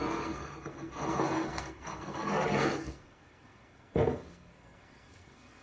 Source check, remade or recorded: remade